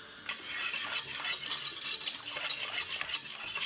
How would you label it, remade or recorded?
remade